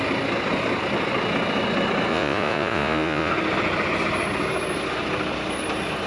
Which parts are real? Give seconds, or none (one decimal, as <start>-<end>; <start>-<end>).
0.0-2.1; 3.3-6.1